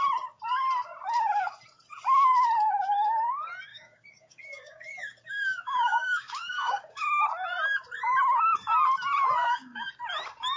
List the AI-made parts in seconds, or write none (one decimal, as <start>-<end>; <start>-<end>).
3.7-7.1; 9.4-9.9